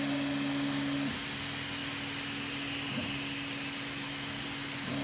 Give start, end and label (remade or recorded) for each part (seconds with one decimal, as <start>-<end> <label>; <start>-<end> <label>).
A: 0.0-5.0 recorded